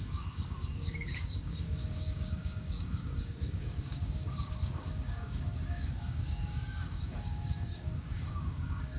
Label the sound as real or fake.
fake